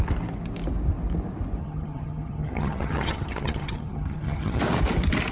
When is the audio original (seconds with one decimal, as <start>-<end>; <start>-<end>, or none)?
0.0-1.6; 4.6-5.3